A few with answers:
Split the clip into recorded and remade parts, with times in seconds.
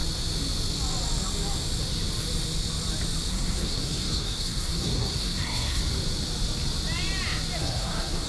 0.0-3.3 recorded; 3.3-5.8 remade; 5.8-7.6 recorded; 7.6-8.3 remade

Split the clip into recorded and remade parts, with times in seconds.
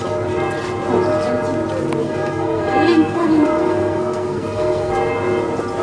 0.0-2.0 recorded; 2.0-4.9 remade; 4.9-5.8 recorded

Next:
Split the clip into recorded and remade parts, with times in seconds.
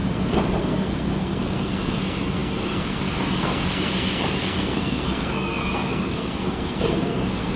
0.0-7.6 remade